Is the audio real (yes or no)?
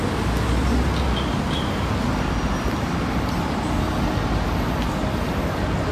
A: yes